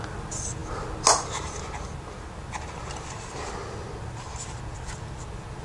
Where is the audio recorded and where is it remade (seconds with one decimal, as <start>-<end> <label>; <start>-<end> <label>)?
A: 0.0-5.6 recorded